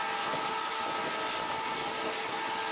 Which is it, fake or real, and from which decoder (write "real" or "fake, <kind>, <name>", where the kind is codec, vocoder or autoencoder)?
real